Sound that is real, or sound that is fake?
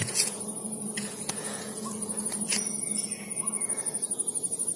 fake